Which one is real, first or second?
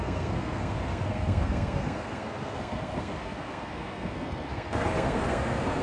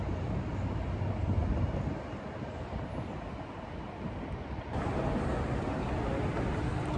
second